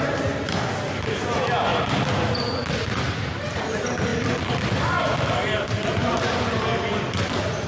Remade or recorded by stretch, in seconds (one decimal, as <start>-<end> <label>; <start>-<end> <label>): 0.0-7.7 recorded